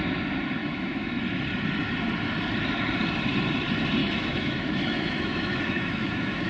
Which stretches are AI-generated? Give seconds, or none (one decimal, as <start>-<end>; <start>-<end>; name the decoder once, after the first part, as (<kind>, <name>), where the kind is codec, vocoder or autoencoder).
0.6-1.2 (autoencoder, DAC-VAE); 4.0-6.5